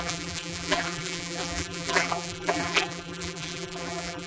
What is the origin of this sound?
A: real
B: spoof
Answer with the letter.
B